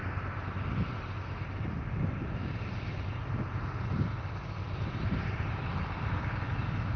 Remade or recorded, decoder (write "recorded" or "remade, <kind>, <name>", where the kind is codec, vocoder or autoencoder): recorded